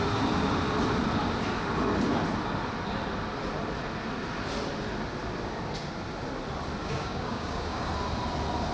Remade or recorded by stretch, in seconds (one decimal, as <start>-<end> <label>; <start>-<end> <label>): 0.0-6.8 recorded; 6.8-7.9 remade; 7.9-8.7 recorded